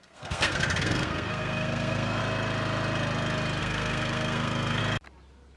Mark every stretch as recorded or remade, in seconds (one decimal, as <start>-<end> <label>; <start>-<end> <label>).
0.0-2.2 remade; 2.2-3.6 recorded; 3.6-4.8 remade; 4.8-5.6 recorded